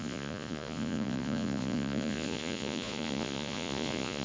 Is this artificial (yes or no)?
yes